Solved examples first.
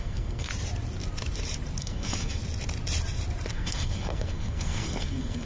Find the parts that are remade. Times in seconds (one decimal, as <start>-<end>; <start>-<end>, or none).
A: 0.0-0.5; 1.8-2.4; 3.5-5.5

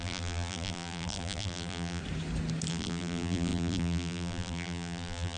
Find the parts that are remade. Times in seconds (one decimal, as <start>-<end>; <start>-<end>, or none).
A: 0.0-2.0; 2.7-5.4

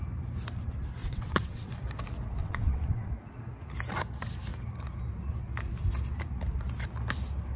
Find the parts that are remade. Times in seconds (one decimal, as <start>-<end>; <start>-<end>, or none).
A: 1.0-1.7; 2.4-3.1